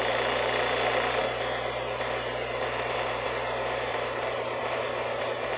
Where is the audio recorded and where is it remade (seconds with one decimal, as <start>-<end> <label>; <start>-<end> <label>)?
0.0-5.6 recorded